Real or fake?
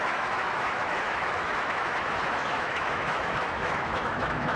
fake